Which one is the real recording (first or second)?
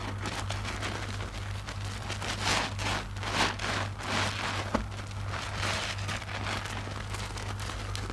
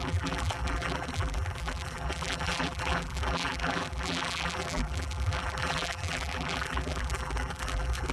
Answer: first